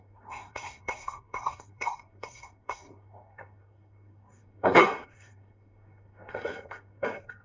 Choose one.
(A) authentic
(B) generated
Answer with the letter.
B